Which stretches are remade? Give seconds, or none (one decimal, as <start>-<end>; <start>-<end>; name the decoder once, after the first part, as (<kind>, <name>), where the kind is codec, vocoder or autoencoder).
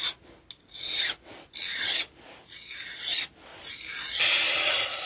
none